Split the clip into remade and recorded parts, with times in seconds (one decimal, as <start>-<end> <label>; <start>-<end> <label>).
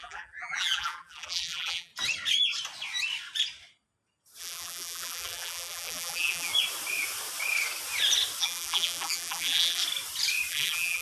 0.0-1.9 remade; 1.9-4.4 recorded; 4.4-6.5 remade; 6.5-8.4 recorded; 8.4-9.8 remade; 9.8-10.5 recorded; 10.5-11.0 remade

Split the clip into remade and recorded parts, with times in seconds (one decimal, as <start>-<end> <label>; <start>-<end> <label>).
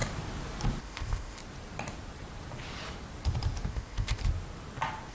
0.0-0.8 recorded; 0.8-1.4 remade; 1.4-3.7 recorded; 3.7-4.2 remade; 4.2-5.1 recorded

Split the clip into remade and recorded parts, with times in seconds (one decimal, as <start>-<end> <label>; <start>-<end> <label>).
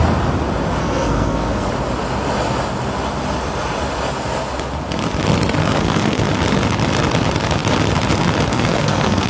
0.0-0.8 recorded; 0.8-1.7 remade; 1.7-5.6 recorded; 5.6-6.2 remade; 6.2-8.5 recorded; 8.5-9.3 remade